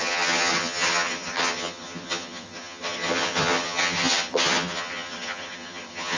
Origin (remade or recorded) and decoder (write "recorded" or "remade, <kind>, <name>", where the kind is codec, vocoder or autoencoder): remade, vocoder, HiFi-GAN